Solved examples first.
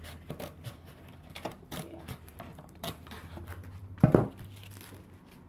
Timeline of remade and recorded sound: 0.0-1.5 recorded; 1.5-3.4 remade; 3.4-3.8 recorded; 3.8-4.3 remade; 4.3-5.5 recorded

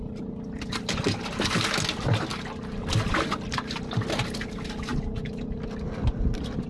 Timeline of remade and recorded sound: 0.0-6.7 recorded